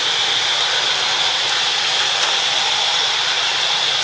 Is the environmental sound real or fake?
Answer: real